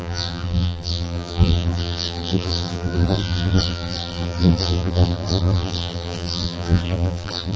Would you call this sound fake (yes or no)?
yes